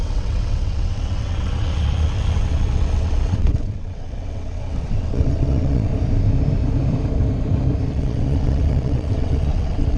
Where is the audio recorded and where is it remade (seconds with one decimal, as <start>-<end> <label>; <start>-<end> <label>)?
0.0-5.9 remade; 5.9-7.9 recorded; 7.9-10.0 remade